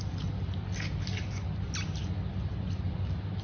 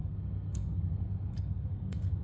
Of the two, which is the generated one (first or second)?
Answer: second